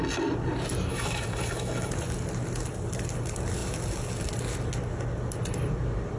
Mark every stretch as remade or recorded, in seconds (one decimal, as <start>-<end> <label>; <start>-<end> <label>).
0.0-0.9 recorded; 0.9-1.9 remade; 1.9-6.2 recorded